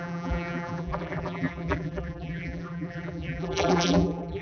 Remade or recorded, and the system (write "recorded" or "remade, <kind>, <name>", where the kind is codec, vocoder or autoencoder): remade, vocoder, BigVGAN v2